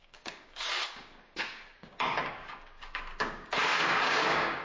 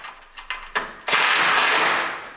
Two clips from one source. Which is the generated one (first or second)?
first